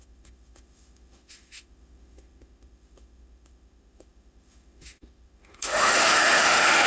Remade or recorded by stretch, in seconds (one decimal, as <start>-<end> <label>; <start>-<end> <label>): 0.0-6.9 remade